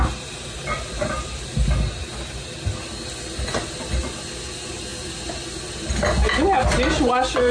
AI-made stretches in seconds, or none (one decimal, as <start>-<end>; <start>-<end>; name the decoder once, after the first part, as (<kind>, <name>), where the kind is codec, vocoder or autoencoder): none